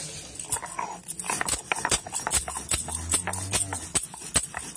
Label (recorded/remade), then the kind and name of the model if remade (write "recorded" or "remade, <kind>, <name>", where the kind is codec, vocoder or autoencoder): recorded